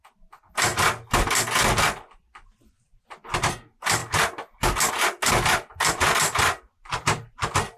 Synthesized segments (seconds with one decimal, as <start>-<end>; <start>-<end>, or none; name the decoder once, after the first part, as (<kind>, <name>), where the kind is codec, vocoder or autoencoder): none